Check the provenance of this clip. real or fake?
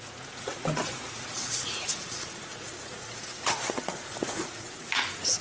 fake